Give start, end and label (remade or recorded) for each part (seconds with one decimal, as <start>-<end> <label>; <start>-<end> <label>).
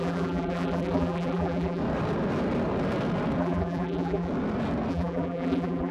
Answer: 0.0-1.8 remade; 1.8-3.4 recorded; 3.4-4.3 remade; 4.3-4.9 recorded; 4.9-5.9 remade